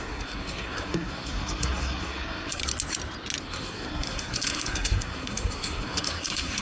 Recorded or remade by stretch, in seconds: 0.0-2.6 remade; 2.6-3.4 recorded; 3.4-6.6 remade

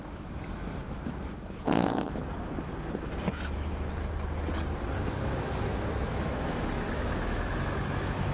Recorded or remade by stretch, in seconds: 0.0-2.2 remade; 2.2-5.1 recorded; 5.1-8.3 remade

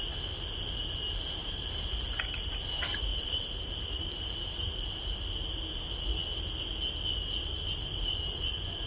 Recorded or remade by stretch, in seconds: 0.0-1.4 recorded; 1.4-2.5 remade; 2.5-3.1 recorded; 3.1-4.6 remade; 4.6-8.9 recorded

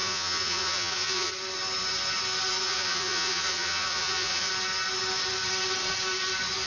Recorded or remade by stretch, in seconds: 0.0-1.3 remade; 1.3-2.6 recorded; 2.6-4.5 remade; 4.5-6.7 recorded

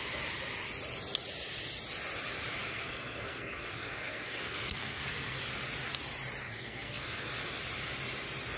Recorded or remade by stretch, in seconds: 0.0-2.6 recorded; 2.6-5.4 remade; 5.4-6.4 recorded; 6.4-7.3 remade; 7.3-8.6 recorded

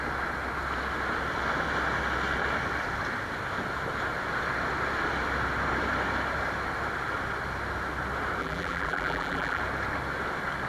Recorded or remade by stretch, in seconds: 0.0-8.4 recorded; 8.4-9.6 remade; 9.6-10.7 recorded